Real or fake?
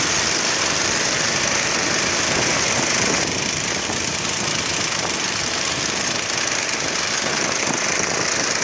real